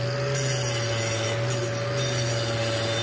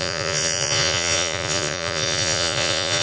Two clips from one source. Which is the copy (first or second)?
second